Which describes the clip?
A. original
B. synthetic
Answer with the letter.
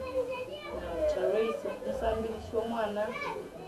B